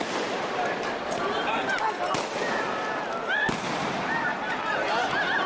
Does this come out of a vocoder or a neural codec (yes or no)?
no